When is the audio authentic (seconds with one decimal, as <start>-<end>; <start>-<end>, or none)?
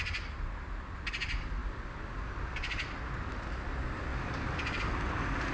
0.0-1.6; 2.3-4.1; 4.8-5.5